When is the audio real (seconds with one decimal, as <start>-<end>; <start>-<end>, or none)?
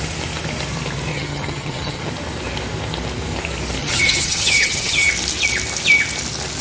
0.0-1.1; 2.1-3.8; 5.1-6.6